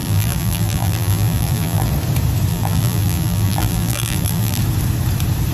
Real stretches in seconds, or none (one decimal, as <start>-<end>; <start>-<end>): 1.9-2.5; 4.6-5.5